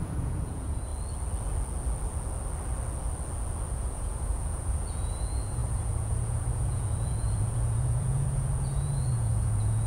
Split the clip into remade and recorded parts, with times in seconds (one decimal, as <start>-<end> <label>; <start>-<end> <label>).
0.0-0.9 remade; 0.9-3.7 recorded; 3.7-9.9 remade